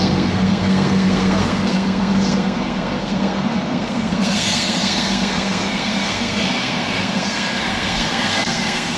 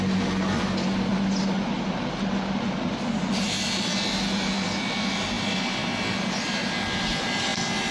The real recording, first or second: second